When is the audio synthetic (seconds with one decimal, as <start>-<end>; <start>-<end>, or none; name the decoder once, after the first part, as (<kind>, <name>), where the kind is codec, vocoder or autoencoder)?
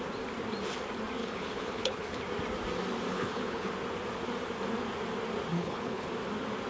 1.2-2.2 (codec, HILCodec); 3.1-3.7; 5.5-6.1